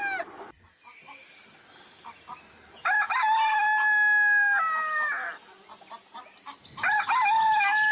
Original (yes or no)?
yes